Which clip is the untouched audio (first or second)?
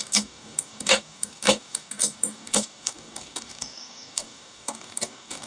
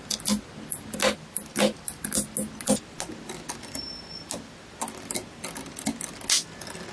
second